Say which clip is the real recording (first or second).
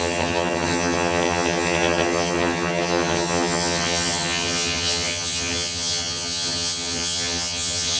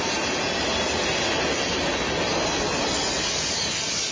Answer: second